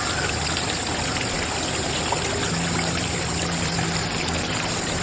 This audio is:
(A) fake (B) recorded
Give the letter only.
B